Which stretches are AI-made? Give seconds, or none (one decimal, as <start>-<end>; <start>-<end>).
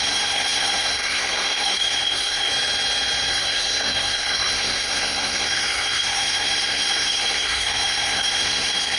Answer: 0.0-2.5; 3.3-9.0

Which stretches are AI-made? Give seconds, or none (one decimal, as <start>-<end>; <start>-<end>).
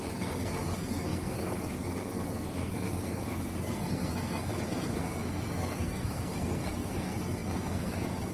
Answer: 0.0-8.3